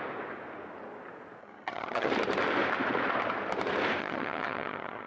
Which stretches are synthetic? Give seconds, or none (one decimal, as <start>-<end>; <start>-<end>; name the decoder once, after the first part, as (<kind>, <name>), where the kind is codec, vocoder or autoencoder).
1.4-2.1 (vocoder, HiFi-GAN); 4.0-5.1

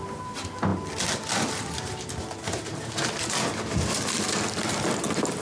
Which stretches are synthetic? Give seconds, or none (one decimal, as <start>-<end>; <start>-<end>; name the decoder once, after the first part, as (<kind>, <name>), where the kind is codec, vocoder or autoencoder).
none

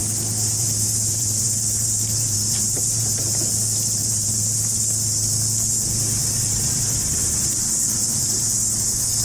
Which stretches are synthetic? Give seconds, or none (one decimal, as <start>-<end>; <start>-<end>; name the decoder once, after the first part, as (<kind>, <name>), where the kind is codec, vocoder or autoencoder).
0.0-3.5 (vocoder, BigVGAN v2); 4.0-4.6; 6.2-8.3

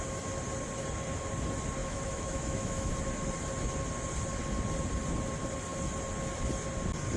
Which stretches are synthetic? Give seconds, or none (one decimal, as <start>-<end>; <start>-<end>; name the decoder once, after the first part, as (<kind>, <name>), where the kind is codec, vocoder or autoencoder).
1.8-2.9 (autoencoder, DAC-VAE)

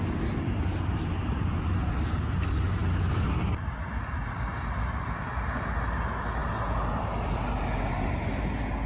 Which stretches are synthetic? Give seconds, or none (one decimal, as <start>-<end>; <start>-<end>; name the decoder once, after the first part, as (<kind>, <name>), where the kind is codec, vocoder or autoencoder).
none

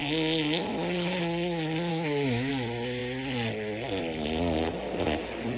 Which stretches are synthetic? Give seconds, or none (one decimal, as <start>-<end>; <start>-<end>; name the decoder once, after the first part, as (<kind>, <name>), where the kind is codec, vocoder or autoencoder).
1.9-2.5 (autoencoder, DAC-VAE)

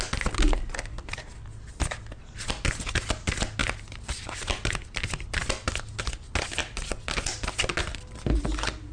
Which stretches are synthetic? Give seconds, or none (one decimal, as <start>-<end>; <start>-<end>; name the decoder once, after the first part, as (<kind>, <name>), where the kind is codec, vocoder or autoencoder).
none

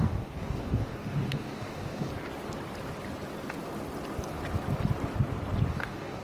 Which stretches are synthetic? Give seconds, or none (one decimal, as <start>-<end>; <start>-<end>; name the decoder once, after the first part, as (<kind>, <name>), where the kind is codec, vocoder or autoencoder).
0.0-2.1 (codec, DAC); 5.7-6.2